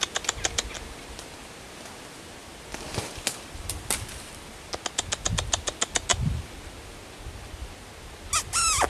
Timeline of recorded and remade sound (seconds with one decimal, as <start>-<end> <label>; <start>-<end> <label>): 0.0-2.4 recorded; 2.4-4.7 remade; 4.7-8.9 recorded